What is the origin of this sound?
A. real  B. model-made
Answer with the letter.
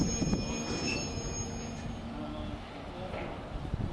A